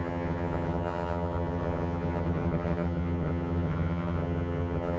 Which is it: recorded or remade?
remade